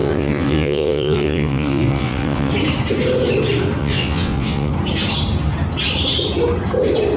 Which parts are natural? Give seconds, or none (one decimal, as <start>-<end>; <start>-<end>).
2.5-3.8; 4.7-7.2